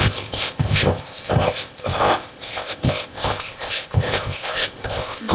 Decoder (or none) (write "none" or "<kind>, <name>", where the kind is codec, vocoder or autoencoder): codec, ZipCodec